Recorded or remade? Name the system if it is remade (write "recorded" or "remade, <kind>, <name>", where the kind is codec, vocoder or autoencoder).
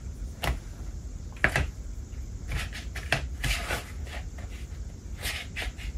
recorded